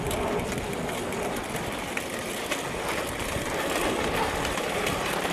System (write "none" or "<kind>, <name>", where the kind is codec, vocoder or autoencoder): none